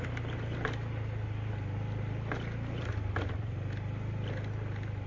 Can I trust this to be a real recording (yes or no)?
yes